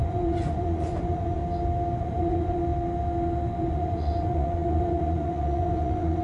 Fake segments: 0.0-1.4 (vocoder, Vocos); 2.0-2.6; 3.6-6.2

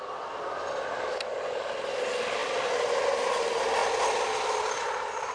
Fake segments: none

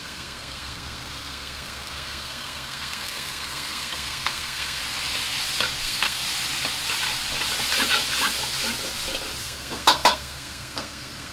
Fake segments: 0.0-4.8 (codec, SNAC); 5.8-6.2; 9.4-11.3

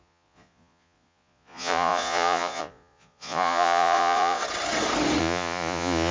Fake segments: 0.0-4.4 (vocoder, Vocos); 5.2-6.1

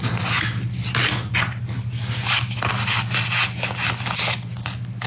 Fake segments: none

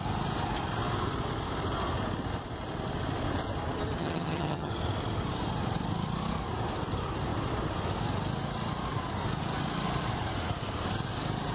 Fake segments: 4.0-4.7 (vocoder, HiFi-GAN)